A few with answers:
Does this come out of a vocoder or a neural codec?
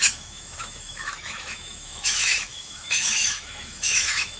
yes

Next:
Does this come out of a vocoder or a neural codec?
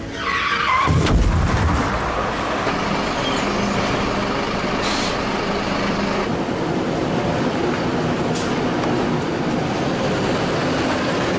no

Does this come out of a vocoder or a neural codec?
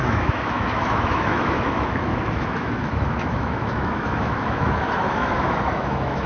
yes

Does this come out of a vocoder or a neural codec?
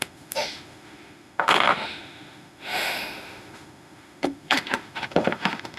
yes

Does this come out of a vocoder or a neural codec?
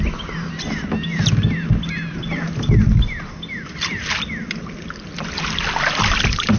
no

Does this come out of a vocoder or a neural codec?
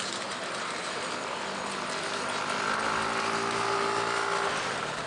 no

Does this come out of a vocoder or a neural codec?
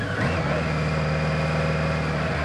no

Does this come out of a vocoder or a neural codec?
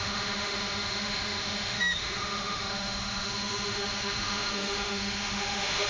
yes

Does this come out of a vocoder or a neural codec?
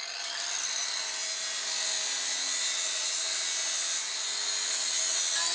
no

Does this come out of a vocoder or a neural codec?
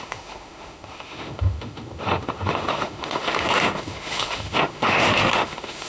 yes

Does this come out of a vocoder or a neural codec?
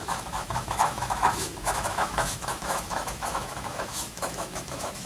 yes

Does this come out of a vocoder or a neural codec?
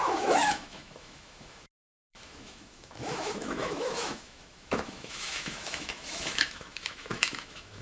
yes